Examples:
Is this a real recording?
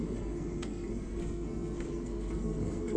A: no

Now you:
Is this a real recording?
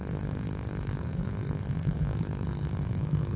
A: no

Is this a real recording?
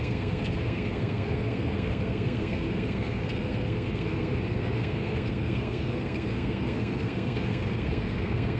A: no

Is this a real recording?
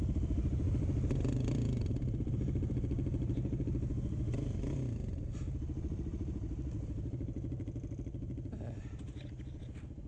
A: yes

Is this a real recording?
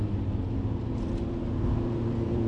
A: yes